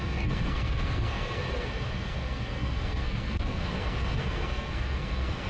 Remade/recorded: remade